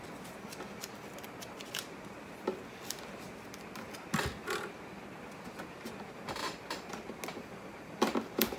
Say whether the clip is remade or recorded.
recorded